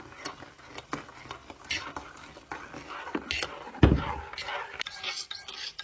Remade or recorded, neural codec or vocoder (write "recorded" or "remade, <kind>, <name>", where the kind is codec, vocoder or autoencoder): recorded